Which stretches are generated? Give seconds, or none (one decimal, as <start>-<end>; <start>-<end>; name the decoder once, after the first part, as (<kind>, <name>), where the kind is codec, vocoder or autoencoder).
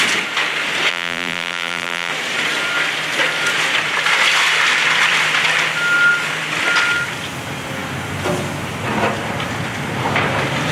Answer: 0.9-2.1 (vocoder, BigVGAN v2)